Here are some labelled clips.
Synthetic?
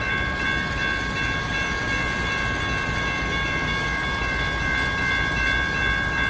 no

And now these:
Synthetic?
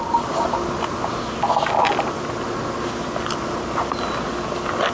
no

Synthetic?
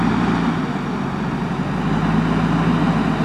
no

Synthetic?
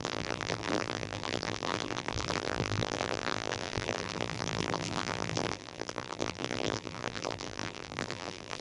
yes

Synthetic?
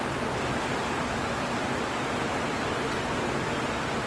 no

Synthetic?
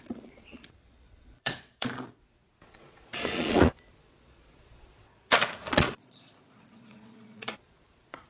yes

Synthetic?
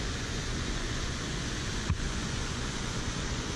yes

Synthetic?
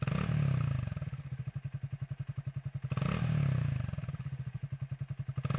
no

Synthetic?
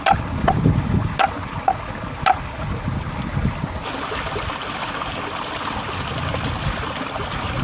no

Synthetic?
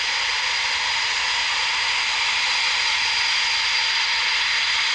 no